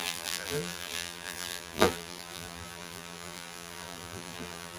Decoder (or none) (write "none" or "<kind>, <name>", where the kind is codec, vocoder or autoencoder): vocoder, BigVGAN v2